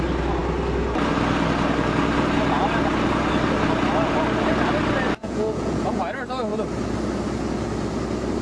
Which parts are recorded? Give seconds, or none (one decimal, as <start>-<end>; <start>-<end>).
0.0-5.2; 6.0-8.4